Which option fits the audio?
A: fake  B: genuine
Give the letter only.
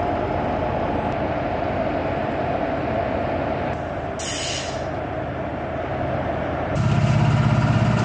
B